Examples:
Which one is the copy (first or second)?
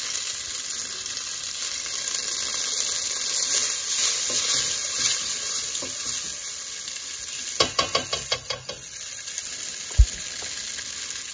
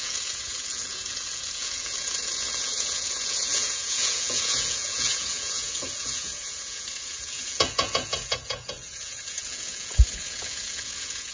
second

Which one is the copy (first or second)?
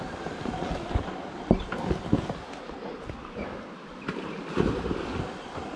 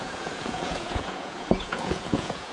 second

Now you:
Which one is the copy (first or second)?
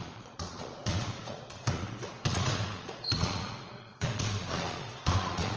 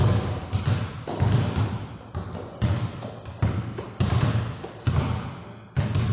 first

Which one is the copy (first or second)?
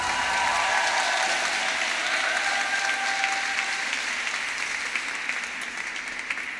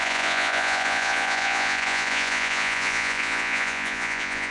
second